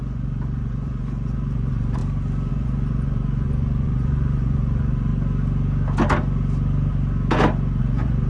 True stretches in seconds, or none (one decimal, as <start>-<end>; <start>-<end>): 2.0-2.5; 5.1-7.8